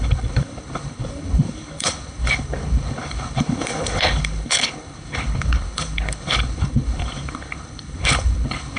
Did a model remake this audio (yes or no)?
yes